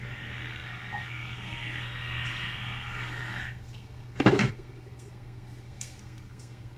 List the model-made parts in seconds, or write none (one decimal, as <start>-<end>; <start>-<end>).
0.0-6.8